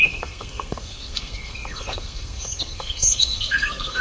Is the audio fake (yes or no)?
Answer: yes